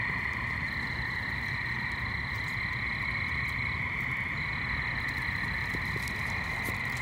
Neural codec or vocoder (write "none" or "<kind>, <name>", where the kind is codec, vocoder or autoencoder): none